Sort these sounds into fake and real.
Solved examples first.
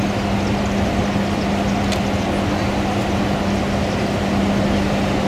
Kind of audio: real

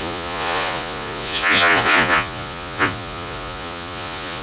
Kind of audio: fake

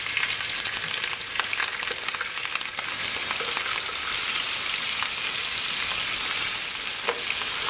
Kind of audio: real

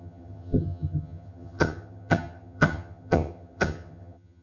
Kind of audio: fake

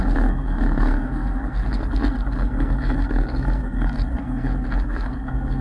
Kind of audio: fake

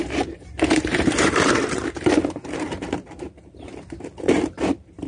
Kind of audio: fake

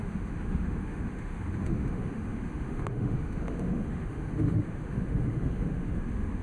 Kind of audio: fake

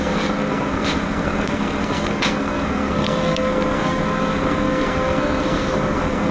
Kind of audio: fake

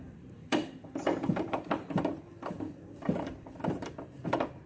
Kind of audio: fake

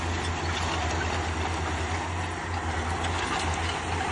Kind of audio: real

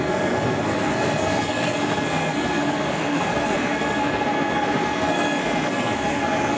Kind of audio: fake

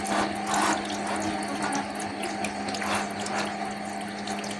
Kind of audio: real